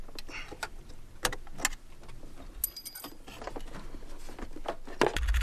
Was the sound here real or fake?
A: real